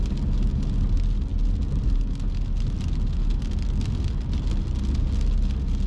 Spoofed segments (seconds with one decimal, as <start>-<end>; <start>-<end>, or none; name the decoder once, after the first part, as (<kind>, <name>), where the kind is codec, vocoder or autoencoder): none